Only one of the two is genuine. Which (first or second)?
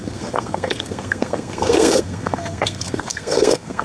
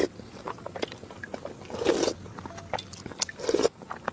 second